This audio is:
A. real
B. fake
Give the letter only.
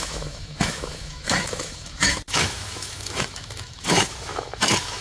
B